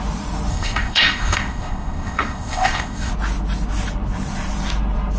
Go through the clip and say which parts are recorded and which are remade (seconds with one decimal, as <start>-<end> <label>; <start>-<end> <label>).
0.0-0.5 recorded; 0.5-3.1 remade; 3.1-5.2 recorded